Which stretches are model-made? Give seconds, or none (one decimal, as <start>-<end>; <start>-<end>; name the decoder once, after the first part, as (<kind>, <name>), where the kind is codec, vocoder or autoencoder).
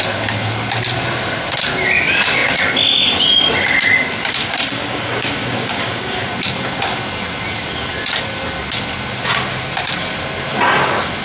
4.4-6.3 (codec, DAC)